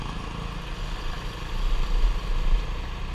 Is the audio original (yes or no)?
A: yes